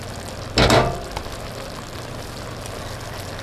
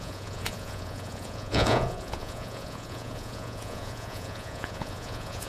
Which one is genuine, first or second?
first